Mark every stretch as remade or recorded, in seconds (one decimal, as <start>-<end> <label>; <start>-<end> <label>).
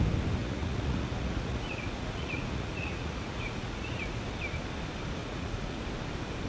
0.0-0.4 recorded; 0.4-4.2 remade; 4.2-5.2 recorded; 5.2-5.8 remade; 5.8-6.5 recorded